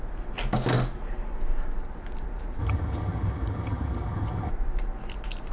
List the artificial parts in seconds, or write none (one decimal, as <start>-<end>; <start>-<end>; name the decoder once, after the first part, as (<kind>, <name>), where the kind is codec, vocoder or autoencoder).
2.6-4.5 (vocoder, HiFi-GAN)